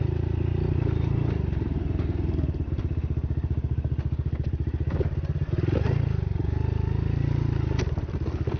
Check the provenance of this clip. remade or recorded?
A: recorded